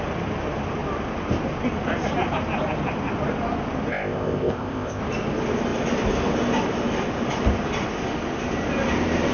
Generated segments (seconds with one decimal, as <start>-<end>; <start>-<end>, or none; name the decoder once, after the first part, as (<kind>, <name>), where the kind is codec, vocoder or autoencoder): 3.9-5.0 (codec, ZipCodec)